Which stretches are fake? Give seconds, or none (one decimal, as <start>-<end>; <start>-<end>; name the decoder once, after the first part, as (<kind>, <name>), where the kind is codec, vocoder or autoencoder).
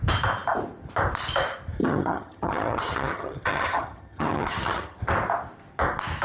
1.8-5.0 (vocoder, HiFi-GAN)